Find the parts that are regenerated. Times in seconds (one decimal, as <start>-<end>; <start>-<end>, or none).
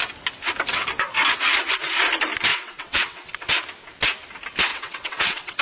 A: 2.5-3.5; 4.7-5.6